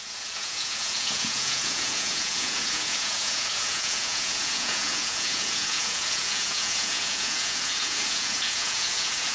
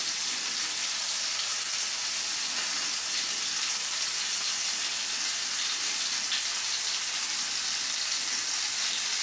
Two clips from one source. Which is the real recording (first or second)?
second